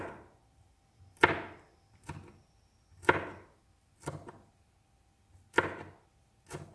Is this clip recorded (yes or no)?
yes